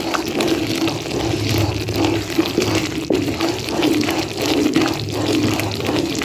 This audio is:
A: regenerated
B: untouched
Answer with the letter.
B